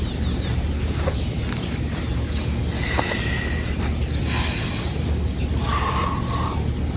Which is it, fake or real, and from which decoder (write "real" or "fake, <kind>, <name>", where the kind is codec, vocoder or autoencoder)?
real